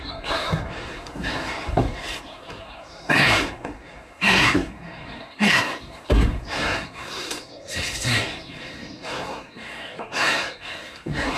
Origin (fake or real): fake